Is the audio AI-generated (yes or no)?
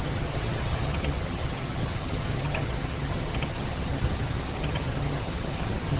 yes